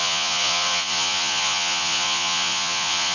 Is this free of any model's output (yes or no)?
no